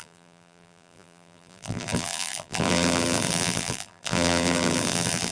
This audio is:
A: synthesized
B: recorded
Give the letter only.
A